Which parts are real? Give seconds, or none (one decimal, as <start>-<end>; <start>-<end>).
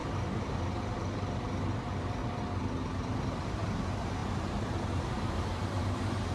2.2-3.2